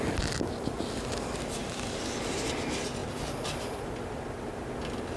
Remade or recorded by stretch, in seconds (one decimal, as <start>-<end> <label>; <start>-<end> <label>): 0.0-5.2 recorded